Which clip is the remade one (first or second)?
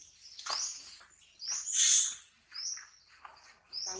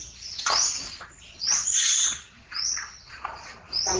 second